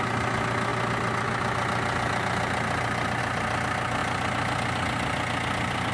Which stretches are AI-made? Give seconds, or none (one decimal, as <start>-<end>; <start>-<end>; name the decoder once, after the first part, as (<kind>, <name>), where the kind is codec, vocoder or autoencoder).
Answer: none